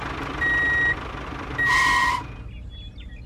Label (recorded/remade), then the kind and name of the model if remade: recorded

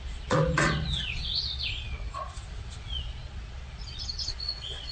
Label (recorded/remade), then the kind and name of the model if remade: remade, vocoder, Vocos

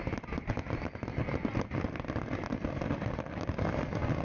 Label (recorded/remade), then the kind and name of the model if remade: recorded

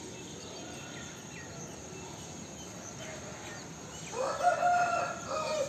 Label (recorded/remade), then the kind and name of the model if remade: recorded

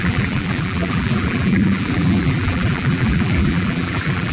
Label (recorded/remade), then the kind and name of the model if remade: remade, vocoder, BigVGAN v2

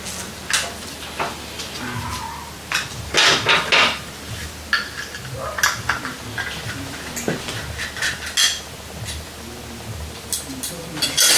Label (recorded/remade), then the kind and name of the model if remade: recorded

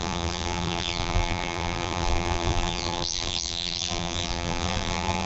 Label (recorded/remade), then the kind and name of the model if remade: remade, vocoder, BigVGAN v2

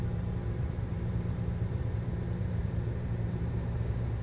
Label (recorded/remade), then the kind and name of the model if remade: remade, vocoder, BigVGAN v2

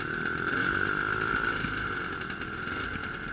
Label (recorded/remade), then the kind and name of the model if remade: recorded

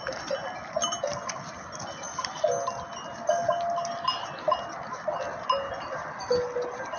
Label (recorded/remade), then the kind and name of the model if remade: recorded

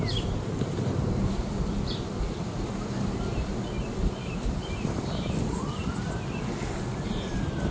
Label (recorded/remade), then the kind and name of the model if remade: recorded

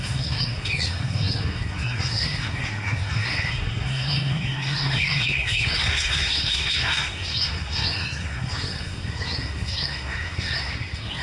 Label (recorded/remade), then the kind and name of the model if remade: remade, codec, SNAC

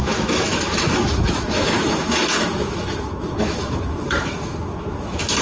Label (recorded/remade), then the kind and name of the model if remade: remade, autoencoder, DAC-VAE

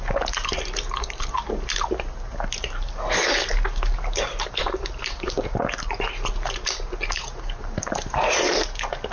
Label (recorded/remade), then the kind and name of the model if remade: recorded